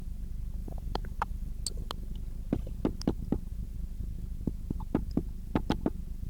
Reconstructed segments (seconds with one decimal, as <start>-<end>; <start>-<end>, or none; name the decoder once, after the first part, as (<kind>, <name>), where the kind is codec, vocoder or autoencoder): 0.6-1.5 (vocoder, BigVGAN v2)